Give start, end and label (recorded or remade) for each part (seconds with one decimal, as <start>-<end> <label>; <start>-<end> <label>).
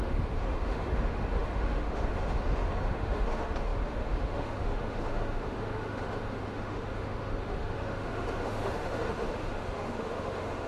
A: 0.0-10.7 remade